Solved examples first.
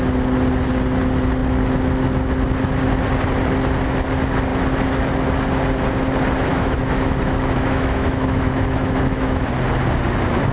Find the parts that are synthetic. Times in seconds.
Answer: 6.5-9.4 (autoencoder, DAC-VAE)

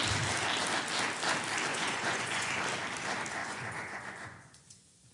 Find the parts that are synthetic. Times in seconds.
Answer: 1.7-2.5 (vocoder, Vocos); 3.4-5.1

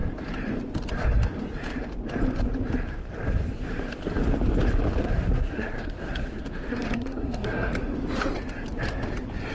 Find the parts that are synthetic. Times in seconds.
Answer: 5.0-7.7 (codec, SNAC)

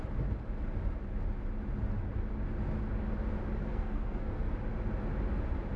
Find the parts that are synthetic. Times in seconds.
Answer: 3.6-4.5 (codec, SNAC)